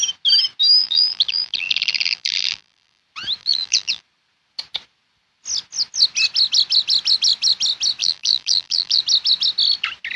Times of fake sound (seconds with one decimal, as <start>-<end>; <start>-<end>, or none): 0.8-3.0; 3.4-4.0; 8.0-9.0